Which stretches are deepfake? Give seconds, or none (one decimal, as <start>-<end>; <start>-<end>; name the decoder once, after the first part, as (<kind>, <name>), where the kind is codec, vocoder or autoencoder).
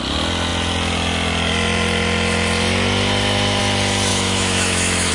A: 4.1-5.1 (autoencoder, DAC-VAE)